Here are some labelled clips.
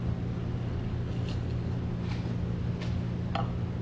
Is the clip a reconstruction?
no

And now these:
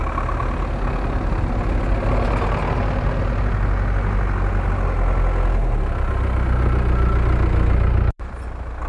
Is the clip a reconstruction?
no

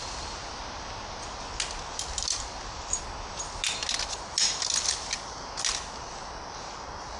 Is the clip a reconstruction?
no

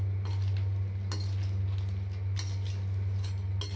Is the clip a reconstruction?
no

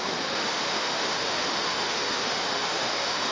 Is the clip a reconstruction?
yes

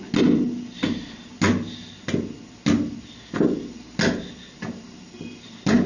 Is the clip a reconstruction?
no